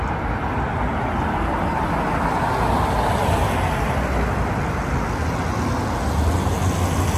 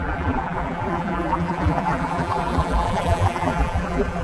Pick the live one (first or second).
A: first